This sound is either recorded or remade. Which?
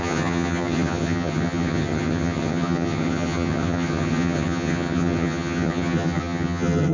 remade